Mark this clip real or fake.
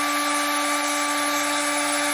real